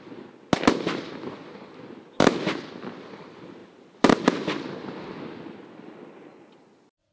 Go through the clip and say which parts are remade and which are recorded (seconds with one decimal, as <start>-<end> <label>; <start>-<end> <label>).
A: 0.0-7.1 recorded